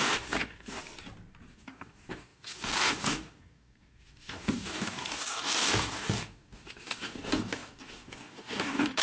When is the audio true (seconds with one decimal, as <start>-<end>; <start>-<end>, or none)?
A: 0.8-1.5